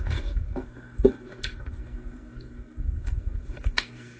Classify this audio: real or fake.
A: fake